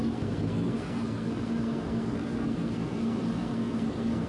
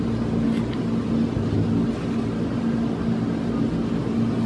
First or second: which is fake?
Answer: first